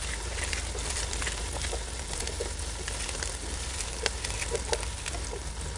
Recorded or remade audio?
recorded